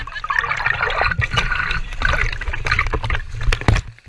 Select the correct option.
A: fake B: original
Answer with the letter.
B